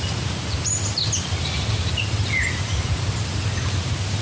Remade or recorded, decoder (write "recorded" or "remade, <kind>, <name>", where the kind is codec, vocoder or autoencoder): recorded